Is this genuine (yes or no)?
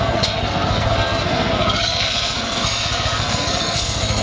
no